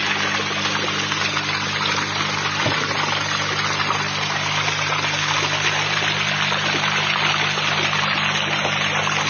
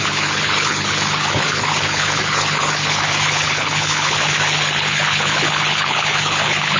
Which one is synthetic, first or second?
second